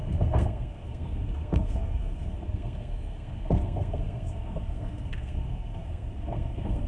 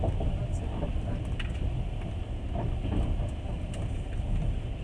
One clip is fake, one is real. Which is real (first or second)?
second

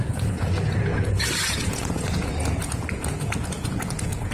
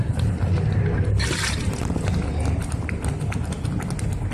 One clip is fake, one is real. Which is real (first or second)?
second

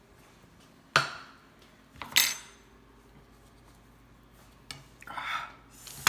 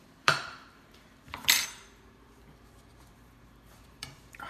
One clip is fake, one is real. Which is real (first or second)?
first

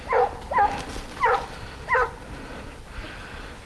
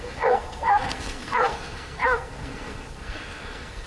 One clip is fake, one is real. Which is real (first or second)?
first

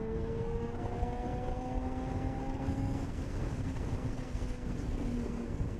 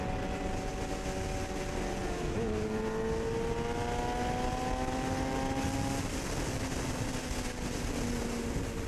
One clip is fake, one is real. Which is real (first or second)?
second